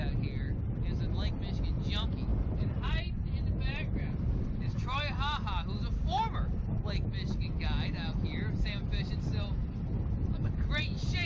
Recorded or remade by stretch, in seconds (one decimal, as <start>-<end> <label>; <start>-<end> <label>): 0.0-11.3 recorded